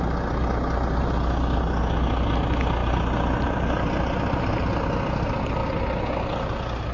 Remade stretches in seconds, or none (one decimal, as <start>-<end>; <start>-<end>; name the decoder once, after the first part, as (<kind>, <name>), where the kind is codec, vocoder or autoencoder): none